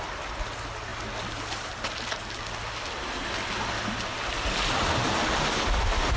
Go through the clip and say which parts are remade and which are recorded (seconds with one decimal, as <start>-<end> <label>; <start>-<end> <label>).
0.0-6.2 recorded

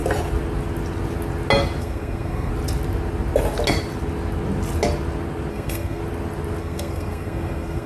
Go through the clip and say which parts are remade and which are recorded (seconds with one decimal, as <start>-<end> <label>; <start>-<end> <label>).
0.0-1.8 recorded; 1.8-2.5 remade; 2.5-5.5 recorded; 5.5-6.0 remade; 6.0-6.6 recorded; 6.6-7.9 remade

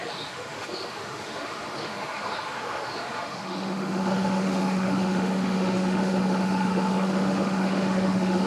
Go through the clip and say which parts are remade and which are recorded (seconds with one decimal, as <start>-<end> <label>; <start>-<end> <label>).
0.0-8.5 remade

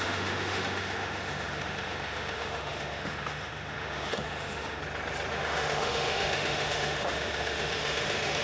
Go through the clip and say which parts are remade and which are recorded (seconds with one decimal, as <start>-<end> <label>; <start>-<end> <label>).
0.0-4.8 remade; 4.8-5.3 recorded; 5.3-8.4 remade